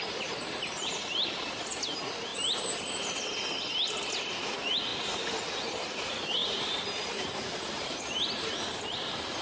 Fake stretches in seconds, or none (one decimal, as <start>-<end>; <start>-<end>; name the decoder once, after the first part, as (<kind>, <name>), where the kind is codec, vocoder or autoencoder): 6.4-9.4 (vocoder, BigVGAN v2)